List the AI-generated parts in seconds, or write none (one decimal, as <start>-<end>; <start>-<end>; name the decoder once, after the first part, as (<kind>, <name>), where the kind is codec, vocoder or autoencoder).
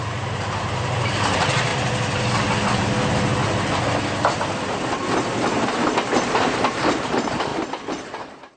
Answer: 0.0-1.7 (vocoder, BigVGAN v2); 6.3-8.6